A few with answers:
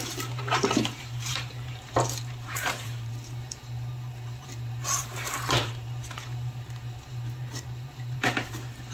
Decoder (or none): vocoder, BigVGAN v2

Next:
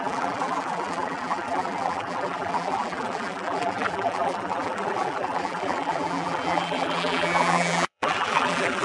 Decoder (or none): vocoder, BigVGAN v2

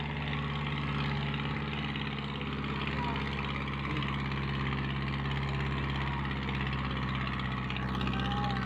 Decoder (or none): none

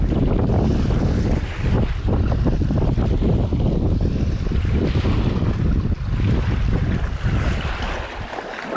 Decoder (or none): none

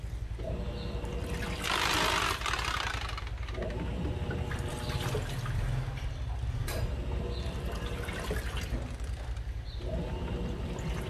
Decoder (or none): none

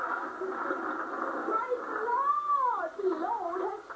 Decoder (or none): none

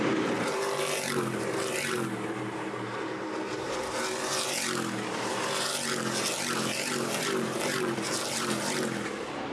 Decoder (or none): vocoder, BigVGAN v2